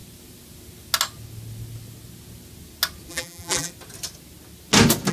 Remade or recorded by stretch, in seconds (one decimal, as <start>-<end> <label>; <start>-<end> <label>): 0.0-3.1 recorded; 3.1-3.7 remade; 3.7-5.1 recorded